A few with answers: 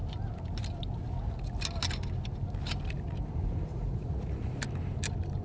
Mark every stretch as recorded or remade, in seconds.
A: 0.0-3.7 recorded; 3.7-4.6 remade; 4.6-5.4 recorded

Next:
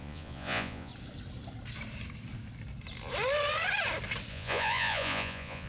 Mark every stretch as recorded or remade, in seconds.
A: 0.0-0.9 remade; 0.9-4.3 recorded; 4.3-5.7 remade

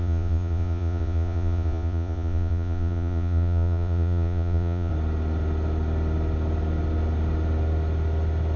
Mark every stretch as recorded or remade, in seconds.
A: 0.0-4.9 remade; 4.9-8.6 recorded

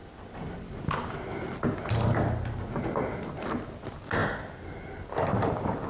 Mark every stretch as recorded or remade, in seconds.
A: 0.0-5.9 recorded